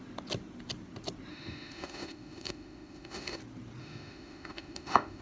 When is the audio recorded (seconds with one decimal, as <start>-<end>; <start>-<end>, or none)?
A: 0.0-1.3; 3.4-3.8